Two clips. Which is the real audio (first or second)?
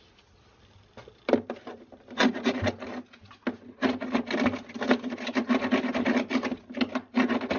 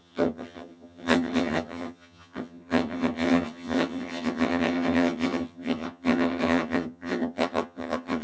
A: first